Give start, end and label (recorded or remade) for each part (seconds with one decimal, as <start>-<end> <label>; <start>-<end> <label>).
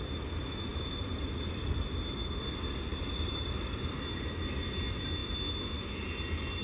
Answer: 0.0-2.9 recorded; 2.9-4.1 remade; 4.1-6.6 recorded